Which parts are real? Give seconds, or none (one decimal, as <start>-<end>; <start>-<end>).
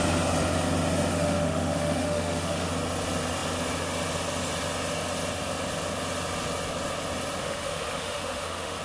0.0-1.1; 2.7-7.4